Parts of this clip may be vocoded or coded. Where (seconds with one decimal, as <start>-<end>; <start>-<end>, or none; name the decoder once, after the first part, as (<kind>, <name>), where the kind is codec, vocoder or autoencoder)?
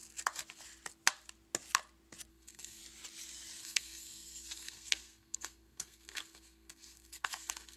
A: 2.3-2.8 (codec, SNAC); 3.6-7.8